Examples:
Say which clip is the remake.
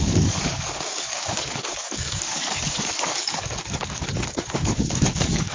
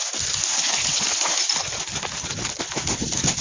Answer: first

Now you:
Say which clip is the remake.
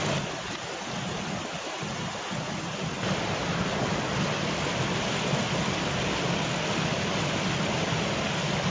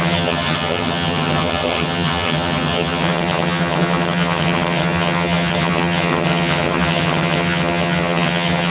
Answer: second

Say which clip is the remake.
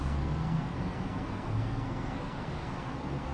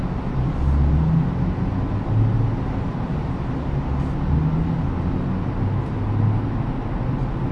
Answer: first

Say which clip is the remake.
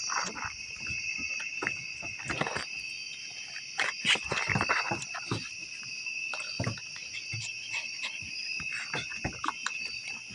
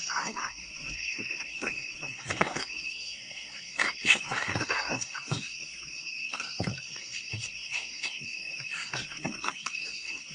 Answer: second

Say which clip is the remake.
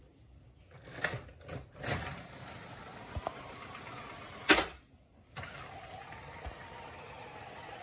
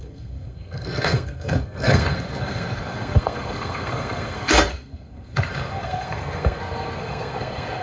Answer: second